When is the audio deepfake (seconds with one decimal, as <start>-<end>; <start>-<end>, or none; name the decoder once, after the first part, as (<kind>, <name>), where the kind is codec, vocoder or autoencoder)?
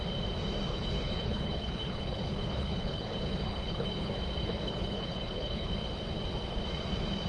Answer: 0.7-4.1 (codec, HILCodec); 4.5-5.7